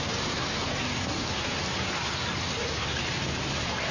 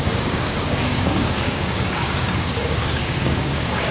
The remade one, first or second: second